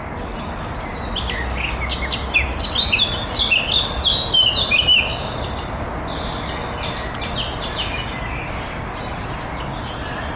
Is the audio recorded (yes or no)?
yes